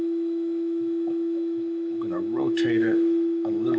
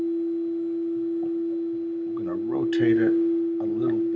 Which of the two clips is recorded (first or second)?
second